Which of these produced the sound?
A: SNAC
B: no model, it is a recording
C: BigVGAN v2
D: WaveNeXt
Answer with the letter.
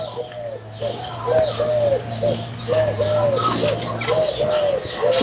B